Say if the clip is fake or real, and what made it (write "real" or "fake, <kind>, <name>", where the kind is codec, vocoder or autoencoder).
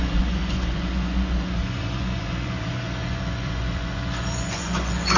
fake, vocoder, Vocos